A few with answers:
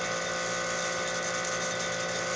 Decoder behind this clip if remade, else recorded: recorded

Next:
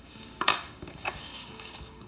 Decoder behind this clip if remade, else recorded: remade, codec, DAC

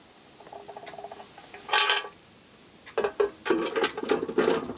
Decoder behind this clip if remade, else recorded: recorded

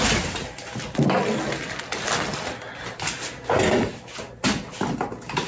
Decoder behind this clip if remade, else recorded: recorded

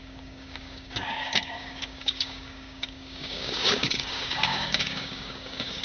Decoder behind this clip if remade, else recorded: remade, codec, DAC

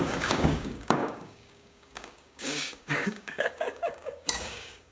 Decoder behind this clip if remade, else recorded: remade, codec, DAC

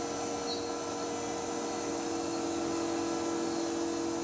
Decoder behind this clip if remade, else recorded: recorded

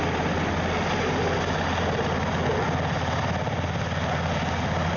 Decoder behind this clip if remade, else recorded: recorded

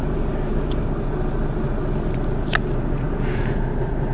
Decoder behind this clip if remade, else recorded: recorded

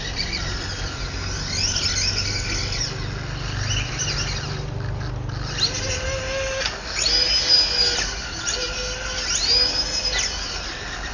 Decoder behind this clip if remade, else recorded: recorded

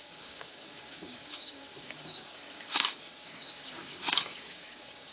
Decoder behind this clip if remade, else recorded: remade, codec, DAC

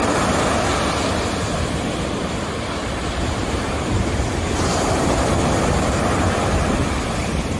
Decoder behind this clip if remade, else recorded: recorded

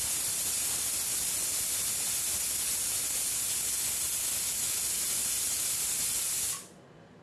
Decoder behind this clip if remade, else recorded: recorded